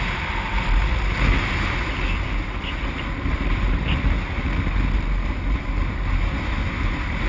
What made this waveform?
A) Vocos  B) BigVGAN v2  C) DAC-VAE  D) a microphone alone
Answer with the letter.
D